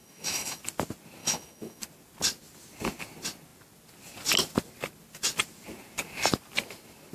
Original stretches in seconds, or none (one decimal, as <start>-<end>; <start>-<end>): 0.6-1.2; 1.8-7.1